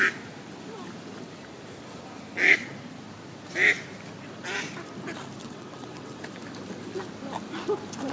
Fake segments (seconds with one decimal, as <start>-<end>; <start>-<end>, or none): 5.4-6.2

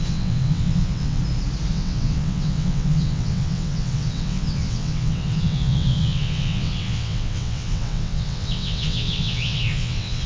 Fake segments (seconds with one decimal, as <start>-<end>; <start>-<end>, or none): 0.0-1.2; 1.7-10.3